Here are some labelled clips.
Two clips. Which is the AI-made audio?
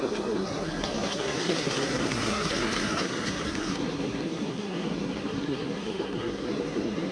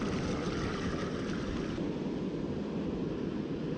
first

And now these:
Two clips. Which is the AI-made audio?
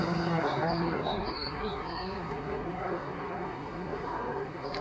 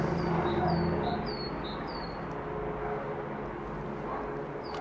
first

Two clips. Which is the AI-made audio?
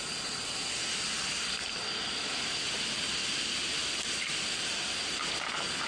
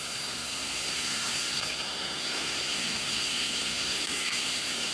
second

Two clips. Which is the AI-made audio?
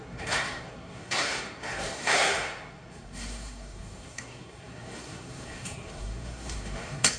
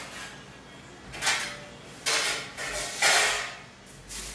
first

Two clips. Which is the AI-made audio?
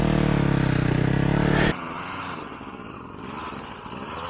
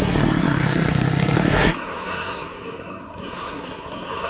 second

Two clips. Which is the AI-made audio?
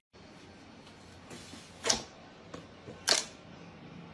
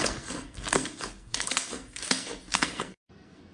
second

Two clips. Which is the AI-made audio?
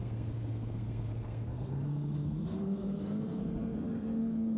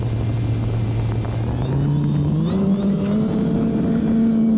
first